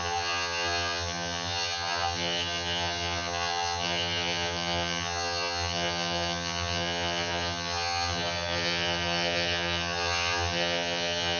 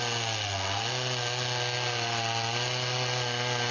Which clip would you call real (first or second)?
second